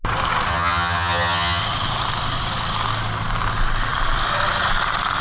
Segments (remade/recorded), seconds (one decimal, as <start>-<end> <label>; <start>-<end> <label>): 0.0-0.5 recorded; 0.5-1.6 remade; 1.6-5.2 recorded